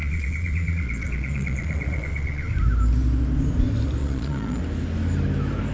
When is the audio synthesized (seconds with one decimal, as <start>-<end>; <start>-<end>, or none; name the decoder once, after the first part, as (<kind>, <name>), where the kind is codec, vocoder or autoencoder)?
0.0-2.5 (vocoder, Vocos); 4.0-4.6